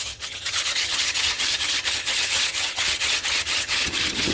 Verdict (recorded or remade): remade